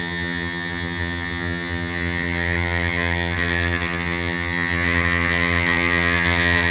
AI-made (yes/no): yes